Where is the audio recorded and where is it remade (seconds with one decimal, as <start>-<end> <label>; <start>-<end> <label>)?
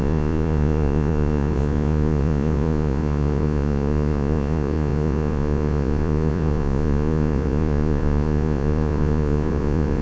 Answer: 0.0-10.0 remade